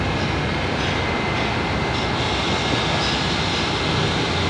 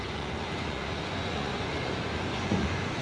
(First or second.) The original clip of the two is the first